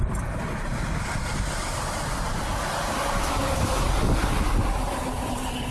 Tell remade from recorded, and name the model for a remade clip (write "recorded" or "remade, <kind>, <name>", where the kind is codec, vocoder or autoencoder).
recorded